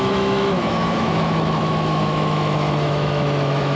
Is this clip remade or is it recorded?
remade